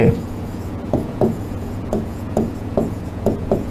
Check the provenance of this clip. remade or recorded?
remade